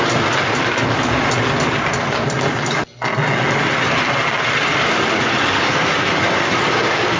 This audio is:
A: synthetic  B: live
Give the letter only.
B